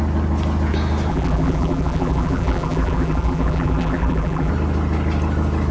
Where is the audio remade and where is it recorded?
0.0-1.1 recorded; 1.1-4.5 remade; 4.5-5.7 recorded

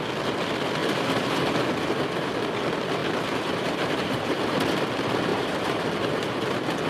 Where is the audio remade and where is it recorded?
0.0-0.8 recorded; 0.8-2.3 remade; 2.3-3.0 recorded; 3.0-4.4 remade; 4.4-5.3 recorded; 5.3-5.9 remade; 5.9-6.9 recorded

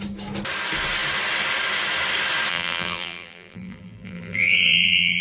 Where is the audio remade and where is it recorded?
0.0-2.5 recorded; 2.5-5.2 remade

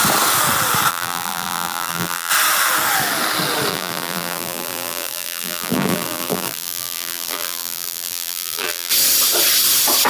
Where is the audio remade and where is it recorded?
0.0-0.9 recorded; 0.9-2.3 remade; 2.3-3.7 recorded; 3.7-8.9 remade; 8.9-10.1 recorded

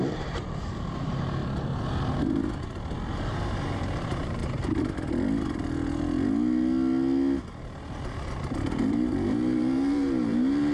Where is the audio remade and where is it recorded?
0.0-1.4 remade; 1.4-3.3 recorded; 3.3-4.4 remade; 4.4-8.8 recorded; 8.8-10.7 remade

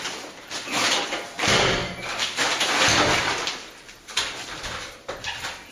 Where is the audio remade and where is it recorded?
0.0-5.7 recorded

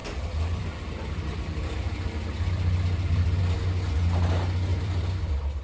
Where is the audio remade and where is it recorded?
0.0-3.4 remade; 3.4-4.7 recorded; 4.7-5.6 remade